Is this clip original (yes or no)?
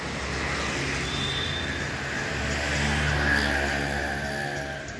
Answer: yes